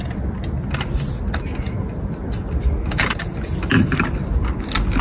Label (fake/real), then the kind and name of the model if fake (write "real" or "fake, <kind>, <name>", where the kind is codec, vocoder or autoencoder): real